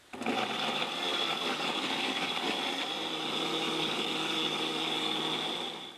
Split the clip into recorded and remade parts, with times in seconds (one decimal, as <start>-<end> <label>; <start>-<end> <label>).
0.0-1.1 recorded; 1.1-2.6 remade; 2.6-3.5 recorded; 3.5-5.2 remade; 5.2-6.0 recorded

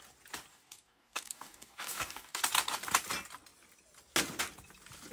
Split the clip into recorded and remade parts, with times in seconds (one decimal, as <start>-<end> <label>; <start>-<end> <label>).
0.0-0.5 recorded; 0.5-2.4 remade; 2.4-5.1 recorded

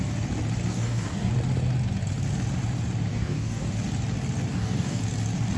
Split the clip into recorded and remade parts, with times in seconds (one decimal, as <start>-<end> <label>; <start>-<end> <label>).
0.0-0.7 recorded; 0.7-1.3 remade; 1.3-3.1 recorded; 3.1-3.7 remade; 3.7-4.5 recorded; 4.5-5.0 remade; 5.0-5.6 recorded

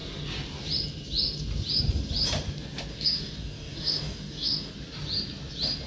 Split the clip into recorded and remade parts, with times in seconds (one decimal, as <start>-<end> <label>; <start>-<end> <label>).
0.0-2.9 recorded; 2.9-4.7 remade; 4.7-5.9 recorded

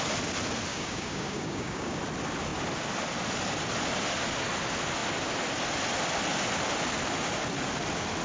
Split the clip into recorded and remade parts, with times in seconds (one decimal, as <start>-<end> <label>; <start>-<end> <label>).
0.0-0.7 recorded; 0.7-2.0 remade; 2.0-8.2 recorded

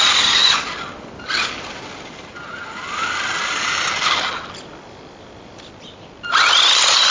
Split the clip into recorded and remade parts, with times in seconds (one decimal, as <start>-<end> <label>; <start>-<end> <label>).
0.0-7.1 recorded

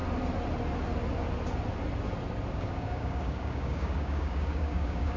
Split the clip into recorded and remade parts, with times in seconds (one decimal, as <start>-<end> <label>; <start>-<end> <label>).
0.0-2.5 recorded; 2.5-5.2 remade

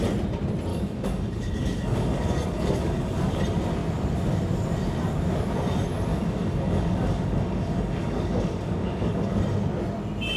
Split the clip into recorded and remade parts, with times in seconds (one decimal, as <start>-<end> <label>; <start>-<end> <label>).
0.0-0.7 recorded; 0.7-3.4 remade; 3.4-6.1 recorded; 6.1-9.4 remade; 9.4-10.4 recorded